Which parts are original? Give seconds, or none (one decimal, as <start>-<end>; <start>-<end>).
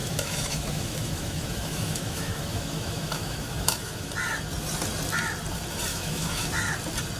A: 4.1-5.9; 6.5-7.2